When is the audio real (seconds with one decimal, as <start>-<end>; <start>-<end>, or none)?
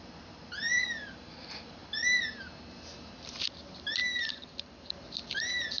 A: 0.0-0.7; 1.3-4.0; 4.9-5.8